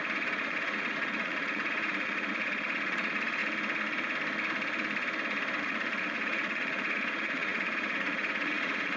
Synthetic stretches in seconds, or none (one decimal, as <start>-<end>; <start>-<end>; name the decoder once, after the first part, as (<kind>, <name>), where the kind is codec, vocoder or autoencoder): 0.0-3.4 (vocoder, Vocos); 5.6-9.0